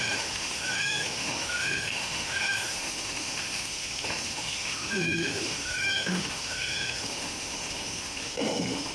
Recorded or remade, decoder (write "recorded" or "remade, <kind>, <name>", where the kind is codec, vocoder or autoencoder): remade, autoencoder, DAC-VAE